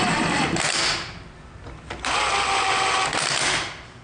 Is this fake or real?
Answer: real